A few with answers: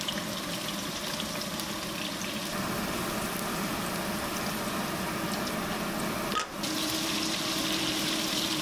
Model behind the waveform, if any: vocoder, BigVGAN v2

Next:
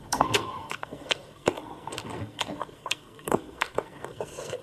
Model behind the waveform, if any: codec, SNAC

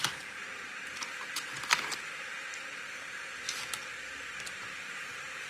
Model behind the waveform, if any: none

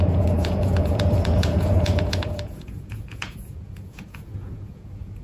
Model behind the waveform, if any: vocoder, Vocos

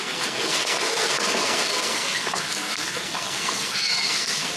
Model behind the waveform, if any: codec, SNAC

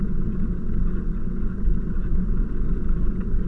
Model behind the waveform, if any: vocoder, WaveNeXt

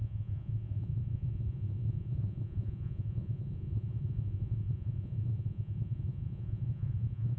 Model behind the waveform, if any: vocoder, Vocos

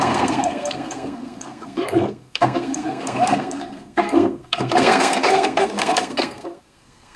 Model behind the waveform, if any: codec, SNAC